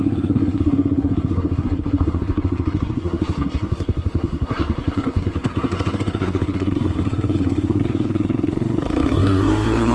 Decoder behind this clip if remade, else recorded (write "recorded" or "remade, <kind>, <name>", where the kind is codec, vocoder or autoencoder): remade, codec, SNAC